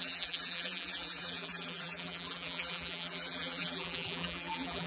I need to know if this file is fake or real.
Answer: fake